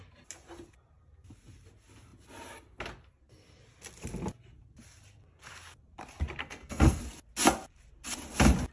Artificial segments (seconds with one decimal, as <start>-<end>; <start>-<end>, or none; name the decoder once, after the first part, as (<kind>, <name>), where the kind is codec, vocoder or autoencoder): 6.4-7.0 (codec, SNAC)